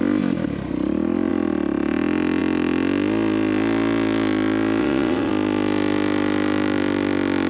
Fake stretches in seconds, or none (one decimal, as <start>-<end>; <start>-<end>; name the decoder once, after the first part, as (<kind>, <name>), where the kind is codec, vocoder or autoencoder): 4.8-5.3 (vocoder, WaveNeXt)